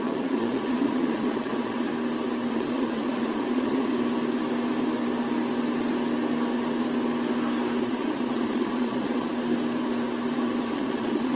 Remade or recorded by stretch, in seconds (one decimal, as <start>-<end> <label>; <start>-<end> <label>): 0.0-1.9 remade; 1.9-2.5 recorded; 2.5-3.9 remade; 3.9-7.8 recorded; 7.8-9.3 remade; 9.3-10.6 recorded; 10.6-11.4 remade